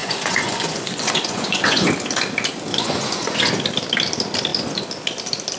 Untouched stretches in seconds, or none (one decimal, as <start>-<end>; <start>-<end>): 1.9-2.7; 3.5-5.6